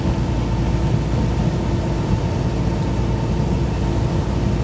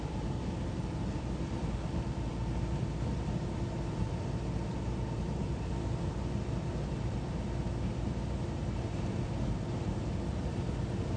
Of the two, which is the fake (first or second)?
second